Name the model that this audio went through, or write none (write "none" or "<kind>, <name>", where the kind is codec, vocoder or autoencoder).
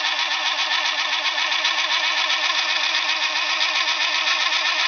none